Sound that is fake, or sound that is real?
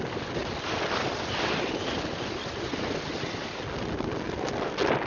real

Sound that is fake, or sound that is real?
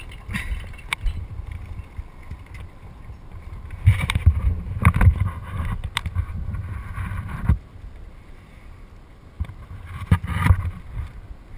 fake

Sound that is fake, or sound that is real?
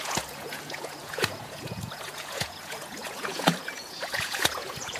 fake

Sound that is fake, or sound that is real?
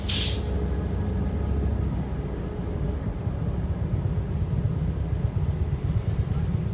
real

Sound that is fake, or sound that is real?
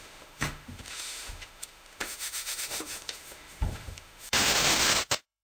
fake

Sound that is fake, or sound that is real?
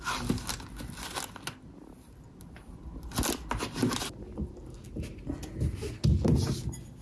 real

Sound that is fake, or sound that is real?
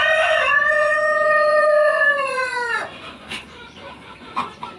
fake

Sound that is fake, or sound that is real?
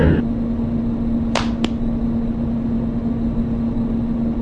real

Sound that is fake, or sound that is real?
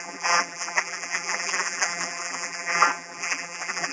fake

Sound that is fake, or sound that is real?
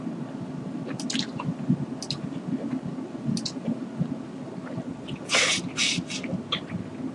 real